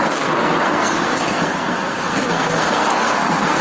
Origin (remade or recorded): remade